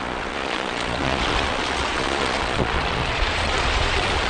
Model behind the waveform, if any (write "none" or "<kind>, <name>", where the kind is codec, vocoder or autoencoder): vocoder, Vocos